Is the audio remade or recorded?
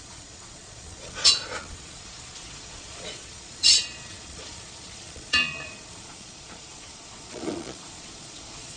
remade